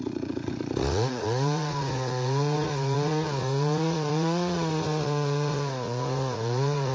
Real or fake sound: fake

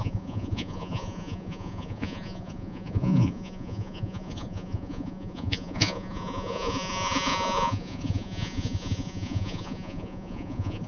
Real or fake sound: fake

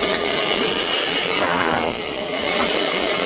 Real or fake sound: fake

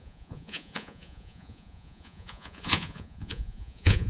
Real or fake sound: fake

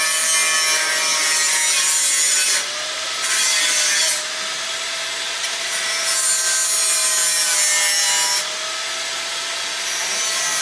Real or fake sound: real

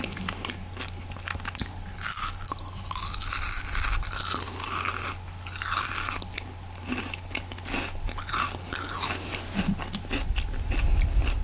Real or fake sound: real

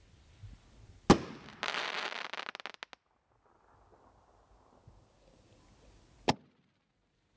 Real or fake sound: real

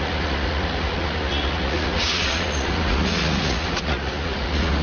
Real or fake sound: fake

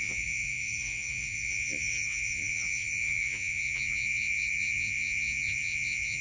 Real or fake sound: fake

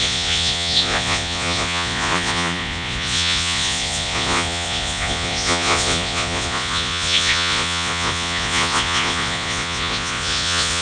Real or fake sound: fake